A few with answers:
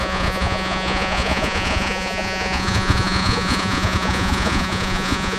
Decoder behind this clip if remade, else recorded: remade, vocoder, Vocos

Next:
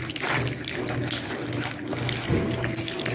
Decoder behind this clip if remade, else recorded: recorded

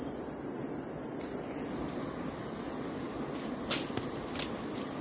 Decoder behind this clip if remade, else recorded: recorded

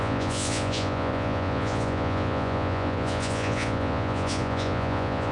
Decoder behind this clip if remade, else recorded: remade, vocoder, Vocos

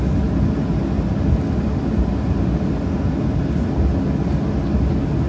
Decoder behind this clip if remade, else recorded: recorded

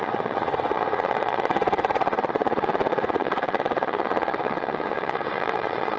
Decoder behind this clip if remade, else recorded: remade, vocoder, Vocos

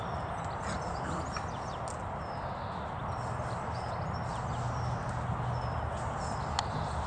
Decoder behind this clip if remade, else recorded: recorded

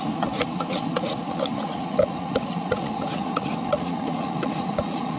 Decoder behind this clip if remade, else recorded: remade, vocoder, Vocos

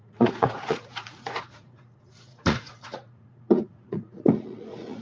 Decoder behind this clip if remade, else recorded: remade, vocoder, Vocos